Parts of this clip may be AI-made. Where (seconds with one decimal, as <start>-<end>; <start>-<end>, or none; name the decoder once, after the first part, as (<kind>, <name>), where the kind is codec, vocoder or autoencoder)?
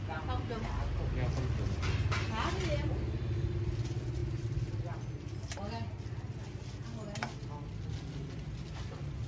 none